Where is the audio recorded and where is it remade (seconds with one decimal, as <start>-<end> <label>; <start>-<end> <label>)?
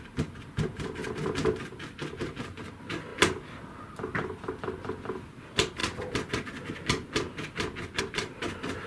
0.0-1.0 remade; 1.0-1.6 recorded; 1.6-3.1 remade; 3.1-5.3 recorded; 5.3-5.8 remade; 5.8-8.0 recorded; 8.0-8.9 remade